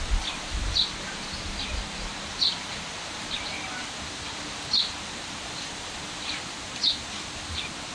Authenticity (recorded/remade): recorded